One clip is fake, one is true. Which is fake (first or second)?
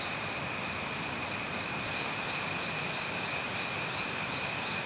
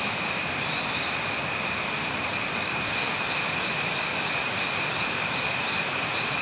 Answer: second